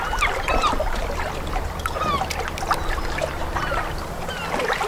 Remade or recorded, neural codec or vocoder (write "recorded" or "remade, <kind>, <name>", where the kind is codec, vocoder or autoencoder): recorded